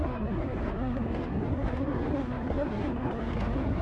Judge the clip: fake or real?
fake